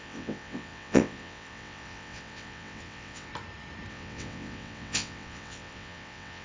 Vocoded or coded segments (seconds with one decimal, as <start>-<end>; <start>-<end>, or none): 0.0-3.3; 3.9-6.4